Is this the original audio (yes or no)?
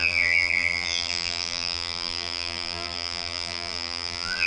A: no